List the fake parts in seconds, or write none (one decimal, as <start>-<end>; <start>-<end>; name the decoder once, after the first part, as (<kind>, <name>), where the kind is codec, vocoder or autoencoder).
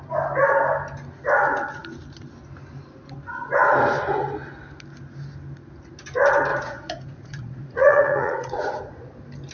6.5-9.1 (vocoder, Vocos)